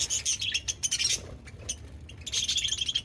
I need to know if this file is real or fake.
real